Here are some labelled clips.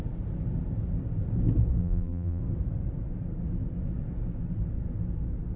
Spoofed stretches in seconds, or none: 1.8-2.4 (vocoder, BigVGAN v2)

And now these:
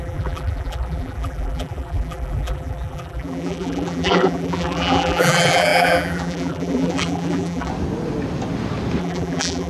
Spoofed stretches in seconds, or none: 0.0-7.7 (vocoder, BigVGAN v2); 9.0-9.7

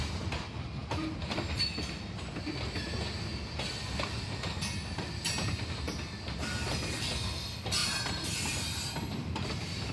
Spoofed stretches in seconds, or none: 7.8-9.9 (vocoder, BigVGAN v2)

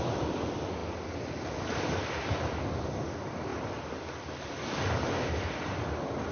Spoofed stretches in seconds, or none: 0.0-0.8 (vocoder, BigVGAN v2); 2.8-3.5; 5.4-6.3

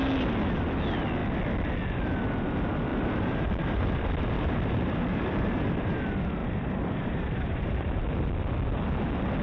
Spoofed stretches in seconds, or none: 2.9-6.0 (vocoder, BigVGAN v2); 6.4-8.1